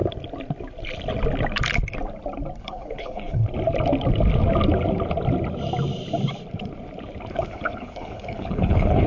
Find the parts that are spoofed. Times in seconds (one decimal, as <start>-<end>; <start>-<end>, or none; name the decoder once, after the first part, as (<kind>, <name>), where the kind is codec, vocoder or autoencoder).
2.6-3.4 (codec, HILCodec); 7.3-9.1